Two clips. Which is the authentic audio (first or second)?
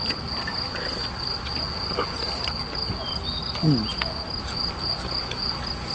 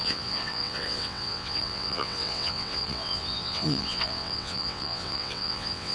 first